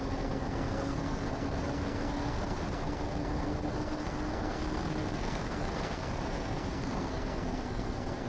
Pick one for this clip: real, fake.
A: fake